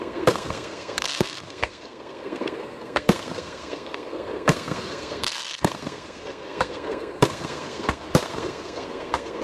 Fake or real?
fake